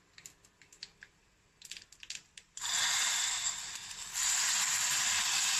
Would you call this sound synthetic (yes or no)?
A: no